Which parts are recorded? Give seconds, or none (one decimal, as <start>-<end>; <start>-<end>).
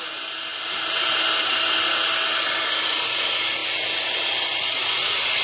0.0-5.4